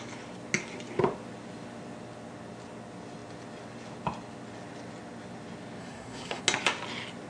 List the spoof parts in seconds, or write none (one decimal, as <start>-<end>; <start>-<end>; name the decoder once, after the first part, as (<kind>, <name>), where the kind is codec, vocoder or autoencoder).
5.8-6.4 (codec, SNAC)

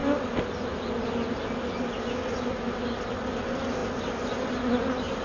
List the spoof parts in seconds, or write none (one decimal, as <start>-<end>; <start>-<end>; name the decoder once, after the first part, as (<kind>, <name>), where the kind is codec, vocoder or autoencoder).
none

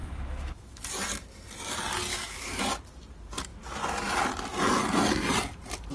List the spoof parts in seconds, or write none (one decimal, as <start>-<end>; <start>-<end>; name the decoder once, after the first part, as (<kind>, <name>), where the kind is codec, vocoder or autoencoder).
0.0-0.8 (autoencoder, DAC-VAE); 2.1-2.6

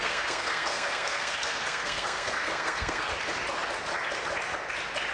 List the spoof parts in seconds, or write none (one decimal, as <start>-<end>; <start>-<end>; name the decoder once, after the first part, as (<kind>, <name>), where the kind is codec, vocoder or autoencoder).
0.0-3.1 (codec, SNAC)

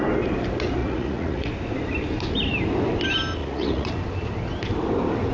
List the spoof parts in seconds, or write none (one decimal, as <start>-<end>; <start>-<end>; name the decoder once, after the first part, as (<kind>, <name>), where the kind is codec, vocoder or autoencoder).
0.8-1.5 (vocoder, Vocos); 3.4-3.9

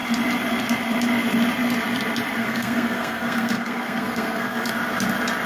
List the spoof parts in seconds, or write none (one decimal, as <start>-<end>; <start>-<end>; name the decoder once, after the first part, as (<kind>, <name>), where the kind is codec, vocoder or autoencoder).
2.4-4.7 (codec, SNAC)

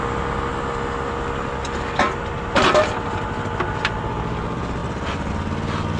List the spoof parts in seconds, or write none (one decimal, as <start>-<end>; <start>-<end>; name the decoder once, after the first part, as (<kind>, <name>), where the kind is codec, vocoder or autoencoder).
none